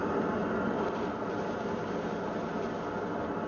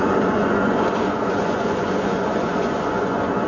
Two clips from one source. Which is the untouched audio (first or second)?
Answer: first